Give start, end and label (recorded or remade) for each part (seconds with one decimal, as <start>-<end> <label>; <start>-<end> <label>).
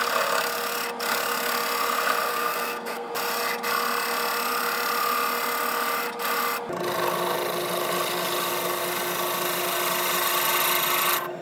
0.0-2.3 recorded; 2.3-3.1 remade; 3.1-11.4 recorded